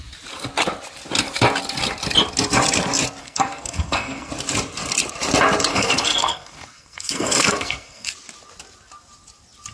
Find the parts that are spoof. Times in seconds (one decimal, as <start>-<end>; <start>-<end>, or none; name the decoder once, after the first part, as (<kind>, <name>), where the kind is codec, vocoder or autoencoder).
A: 3.2-4.3 (codec, SNAC); 5.7-8.1